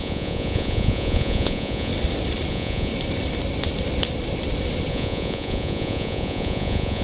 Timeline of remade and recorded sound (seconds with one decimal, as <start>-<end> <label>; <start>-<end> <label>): 0.0-1.9 remade; 1.9-2.5 recorded; 2.5-2.9 remade; 2.9-4.9 recorded; 4.9-7.0 remade